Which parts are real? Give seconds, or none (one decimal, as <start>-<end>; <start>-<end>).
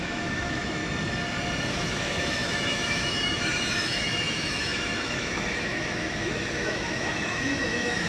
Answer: 0.8-1.7